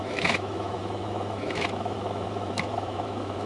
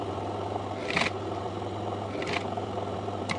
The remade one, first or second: first